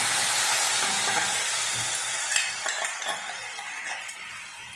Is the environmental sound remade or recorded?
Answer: recorded